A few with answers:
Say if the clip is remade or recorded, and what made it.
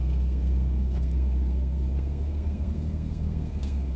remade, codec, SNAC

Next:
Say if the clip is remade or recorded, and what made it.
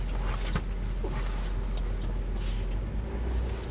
recorded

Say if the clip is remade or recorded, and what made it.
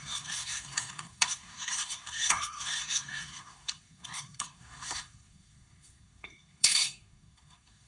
remade, codec, SNAC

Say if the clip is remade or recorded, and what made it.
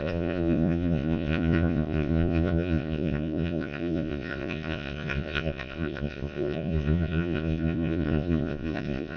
remade, vocoder, Vocos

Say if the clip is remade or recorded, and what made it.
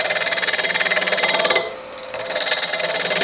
recorded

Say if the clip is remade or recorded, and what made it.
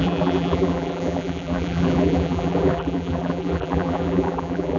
remade, vocoder, BigVGAN v2